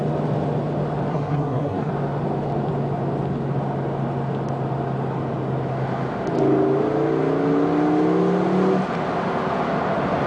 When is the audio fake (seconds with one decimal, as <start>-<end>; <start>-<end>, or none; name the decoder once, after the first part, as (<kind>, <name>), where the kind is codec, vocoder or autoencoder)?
1.1-1.9 (codec, SNAC)